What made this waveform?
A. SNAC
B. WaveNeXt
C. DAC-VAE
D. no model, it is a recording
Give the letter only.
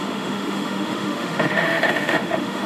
C